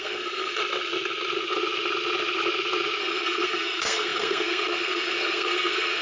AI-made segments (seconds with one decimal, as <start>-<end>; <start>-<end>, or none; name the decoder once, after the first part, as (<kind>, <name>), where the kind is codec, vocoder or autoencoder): 0.0-0.6 (codec, SNAC); 3.0-6.0